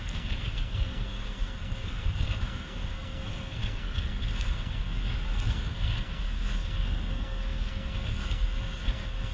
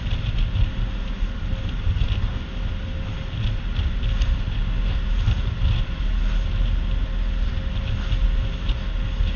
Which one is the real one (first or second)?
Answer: second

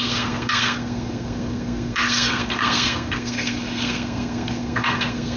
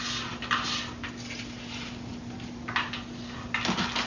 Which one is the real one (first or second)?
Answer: second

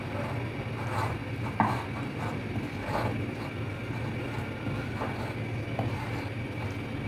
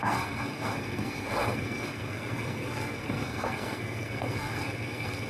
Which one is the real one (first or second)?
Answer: first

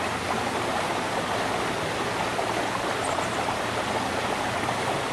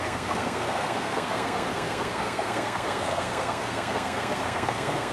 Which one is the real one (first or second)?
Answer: first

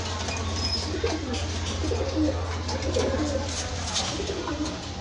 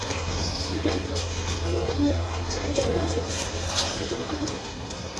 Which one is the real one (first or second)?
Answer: first